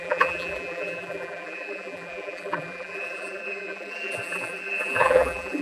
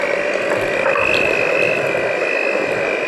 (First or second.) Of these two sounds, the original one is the second